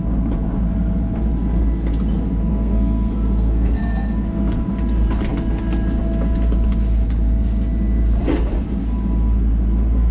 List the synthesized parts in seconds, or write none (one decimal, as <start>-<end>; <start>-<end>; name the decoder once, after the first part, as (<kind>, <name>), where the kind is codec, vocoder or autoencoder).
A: 2.5-3.8 (codec, SNAC)